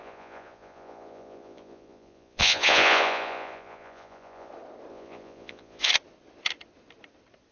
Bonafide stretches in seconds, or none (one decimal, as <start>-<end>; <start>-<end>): 4.5-4.9; 5.9-7.5